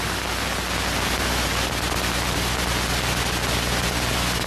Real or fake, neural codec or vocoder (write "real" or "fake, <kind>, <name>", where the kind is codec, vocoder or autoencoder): real